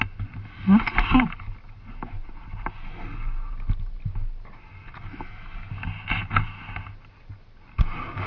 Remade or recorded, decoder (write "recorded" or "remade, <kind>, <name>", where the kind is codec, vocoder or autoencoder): recorded